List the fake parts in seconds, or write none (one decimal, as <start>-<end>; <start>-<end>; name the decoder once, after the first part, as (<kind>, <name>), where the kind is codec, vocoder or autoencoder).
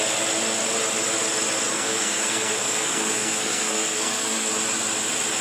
1.7-4.5 (codec, SNAC)